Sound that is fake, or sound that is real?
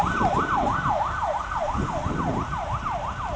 real